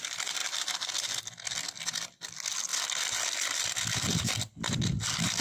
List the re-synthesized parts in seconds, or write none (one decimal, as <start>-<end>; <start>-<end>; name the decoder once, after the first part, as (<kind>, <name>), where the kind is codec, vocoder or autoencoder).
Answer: 2.7-5.4 (vocoder, BigVGAN v2)